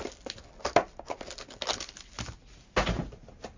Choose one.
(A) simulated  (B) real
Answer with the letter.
B